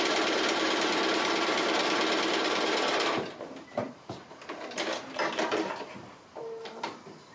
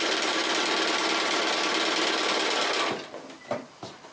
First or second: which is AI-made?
first